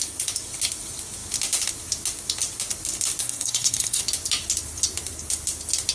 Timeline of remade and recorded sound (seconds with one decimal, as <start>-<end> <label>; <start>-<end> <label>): 0.0-3.2 recorded; 3.2-4.0 remade; 4.0-5.9 recorded